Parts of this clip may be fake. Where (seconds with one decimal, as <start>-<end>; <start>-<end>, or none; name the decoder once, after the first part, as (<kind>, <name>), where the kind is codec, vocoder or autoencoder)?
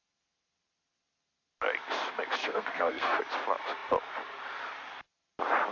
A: 2.4-3.2 (codec, SNAC)